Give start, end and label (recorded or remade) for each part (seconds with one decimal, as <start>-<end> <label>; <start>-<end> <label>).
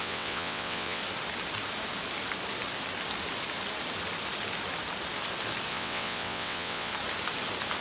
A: 0.0-1.0 remade; 1.0-5.7 recorded; 5.7-6.9 remade; 6.9-7.8 recorded